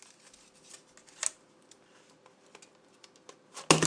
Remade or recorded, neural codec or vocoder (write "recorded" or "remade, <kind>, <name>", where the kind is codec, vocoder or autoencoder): recorded